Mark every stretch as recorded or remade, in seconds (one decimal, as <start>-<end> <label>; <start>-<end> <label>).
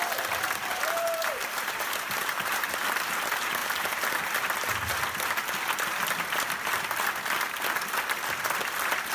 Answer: 0.0-0.7 recorded; 0.7-2.8 remade; 2.8-3.6 recorded; 3.6-4.3 remade; 4.3-9.1 recorded